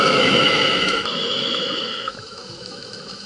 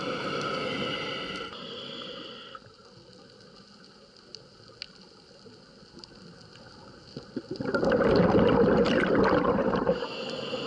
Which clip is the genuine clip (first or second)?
second